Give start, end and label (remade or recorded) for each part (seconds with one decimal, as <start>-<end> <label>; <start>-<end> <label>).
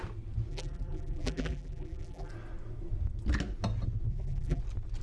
0.0-0.5 recorded; 0.5-2.3 remade; 2.3-4.1 recorded; 4.1-4.6 remade; 4.6-5.0 recorded